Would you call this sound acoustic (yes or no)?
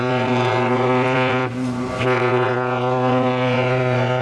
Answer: no